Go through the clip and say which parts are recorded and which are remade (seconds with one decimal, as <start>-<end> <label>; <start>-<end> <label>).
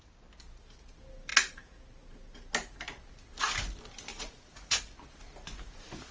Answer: 0.0-1.3 recorded; 1.3-1.8 remade; 1.8-4.1 recorded; 4.1-4.8 remade; 4.8-6.1 recorded